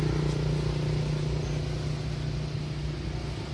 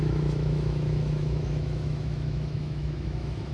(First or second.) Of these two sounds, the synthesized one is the second